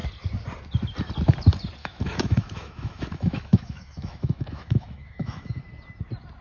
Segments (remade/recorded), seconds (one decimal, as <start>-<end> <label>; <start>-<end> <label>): 0.0-1.8 recorded; 1.8-5.6 remade; 5.6-6.4 recorded